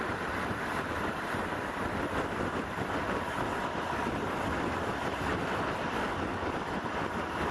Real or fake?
real